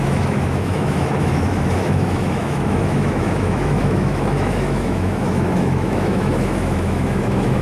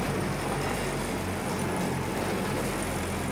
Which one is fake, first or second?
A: first